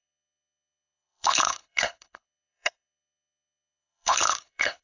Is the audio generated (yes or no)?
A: yes